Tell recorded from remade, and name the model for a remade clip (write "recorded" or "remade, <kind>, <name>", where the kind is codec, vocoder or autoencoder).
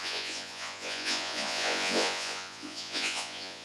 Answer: remade, vocoder, Vocos